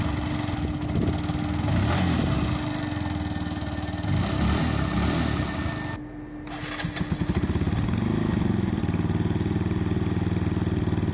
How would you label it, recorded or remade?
recorded